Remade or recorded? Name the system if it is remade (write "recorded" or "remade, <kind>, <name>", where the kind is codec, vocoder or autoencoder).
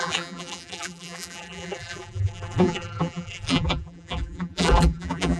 remade, vocoder, BigVGAN v2